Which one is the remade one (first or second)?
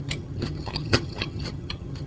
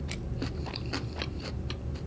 first